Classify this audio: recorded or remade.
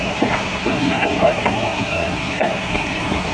remade